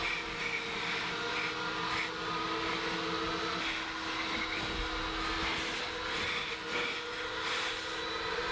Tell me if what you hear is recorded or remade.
recorded